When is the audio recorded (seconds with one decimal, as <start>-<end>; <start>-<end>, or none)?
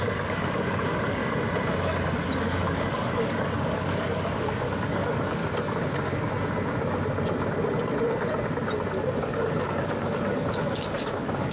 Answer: 1.2-2.4; 5.4-9.2